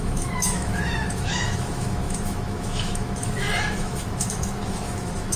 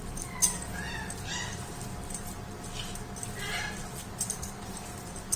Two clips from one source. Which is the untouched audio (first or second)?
second